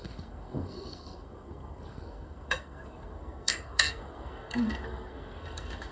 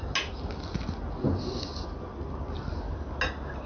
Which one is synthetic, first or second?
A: first